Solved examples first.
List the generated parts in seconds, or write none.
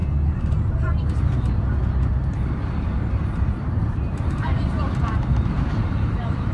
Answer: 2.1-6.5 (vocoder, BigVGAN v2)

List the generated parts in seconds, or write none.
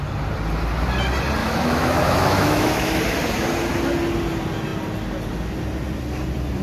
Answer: 1.4-3.0 (autoencoder, DAC-VAE)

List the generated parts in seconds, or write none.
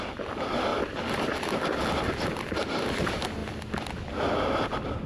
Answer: none